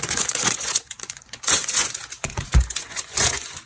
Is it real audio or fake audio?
fake